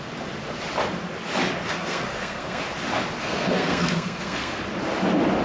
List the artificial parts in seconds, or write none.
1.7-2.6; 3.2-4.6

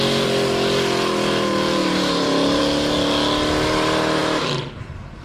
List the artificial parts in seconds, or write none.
1.8-2.6